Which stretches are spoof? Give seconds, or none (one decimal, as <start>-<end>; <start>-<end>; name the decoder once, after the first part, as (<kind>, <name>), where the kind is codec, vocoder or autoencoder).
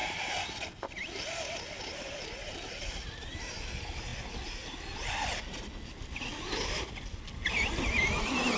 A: none